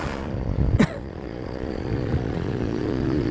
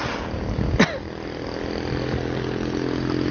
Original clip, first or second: second